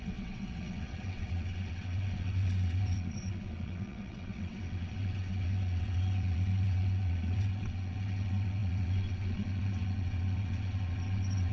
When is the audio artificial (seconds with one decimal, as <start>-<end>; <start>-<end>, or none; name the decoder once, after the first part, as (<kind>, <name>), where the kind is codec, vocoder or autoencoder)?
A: 0.0-11.5 (vocoder, WaveNeXt)